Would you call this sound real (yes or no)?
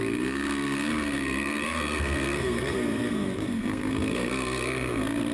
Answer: no